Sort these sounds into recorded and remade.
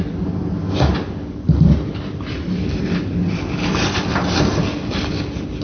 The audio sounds recorded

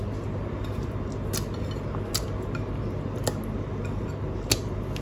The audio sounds recorded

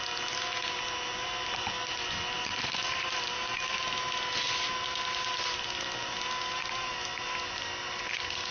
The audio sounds recorded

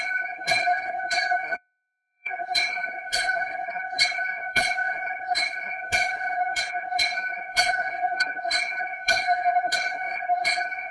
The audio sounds remade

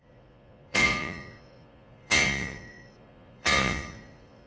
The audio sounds remade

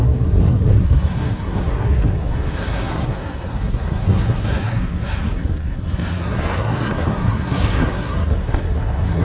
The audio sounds remade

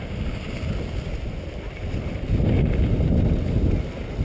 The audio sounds recorded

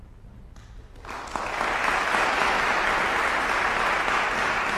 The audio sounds recorded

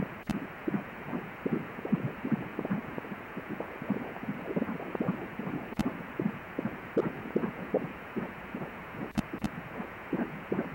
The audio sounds remade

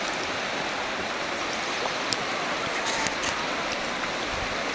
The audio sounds recorded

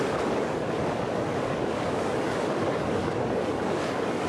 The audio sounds remade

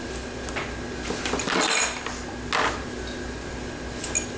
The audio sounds recorded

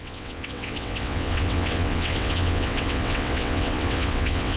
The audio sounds remade